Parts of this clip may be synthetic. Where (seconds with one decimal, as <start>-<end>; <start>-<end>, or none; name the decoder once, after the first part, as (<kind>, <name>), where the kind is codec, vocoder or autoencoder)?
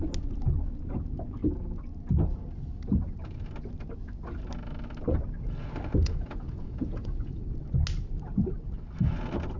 6.0-7.4 (vocoder, Vocos)